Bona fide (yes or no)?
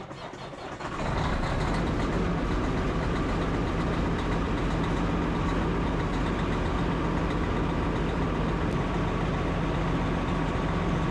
yes